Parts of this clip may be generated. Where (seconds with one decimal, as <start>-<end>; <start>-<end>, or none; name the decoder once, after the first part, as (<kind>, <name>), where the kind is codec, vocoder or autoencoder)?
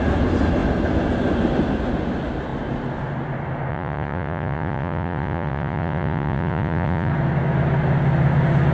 3.7-7.1 (vocoder, Vocos)